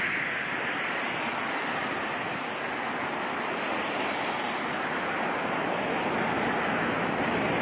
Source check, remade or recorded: recorded